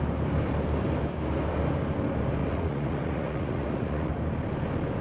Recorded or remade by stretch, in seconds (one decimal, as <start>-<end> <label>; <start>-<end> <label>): 0.0-2.4 recorded; 2.4-4.1 remade; 4.1-5.0 recorded